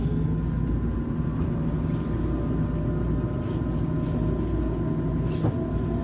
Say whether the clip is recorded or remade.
recorded